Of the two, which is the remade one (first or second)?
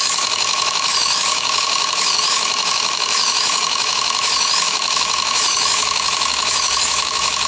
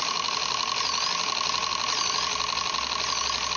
first